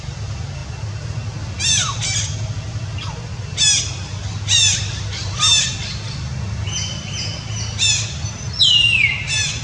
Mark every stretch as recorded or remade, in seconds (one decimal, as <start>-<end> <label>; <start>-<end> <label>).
0.0-9.6 recorded